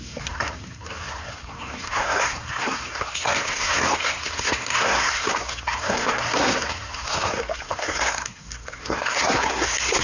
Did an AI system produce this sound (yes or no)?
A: yes